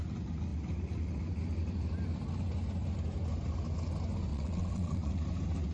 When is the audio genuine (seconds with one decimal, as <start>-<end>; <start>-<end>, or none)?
0.0-4.3; 5.2-5.7